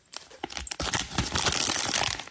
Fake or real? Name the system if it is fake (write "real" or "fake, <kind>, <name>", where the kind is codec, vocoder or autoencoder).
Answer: real